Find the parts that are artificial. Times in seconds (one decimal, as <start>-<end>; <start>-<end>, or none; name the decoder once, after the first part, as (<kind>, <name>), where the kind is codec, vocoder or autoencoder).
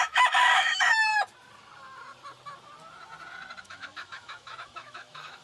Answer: 0.0-1.1 (autoencoder, DAC-VAE); 3.6-5.4